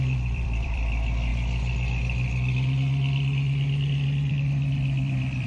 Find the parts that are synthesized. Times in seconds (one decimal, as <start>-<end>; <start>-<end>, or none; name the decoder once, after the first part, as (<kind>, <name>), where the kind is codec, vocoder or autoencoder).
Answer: 0.0-1.3 (vocoder, BigVGAN v2); 4.3-5.5